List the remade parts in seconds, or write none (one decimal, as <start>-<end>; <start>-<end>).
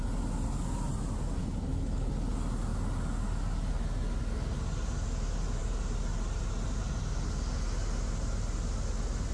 1.4-2.1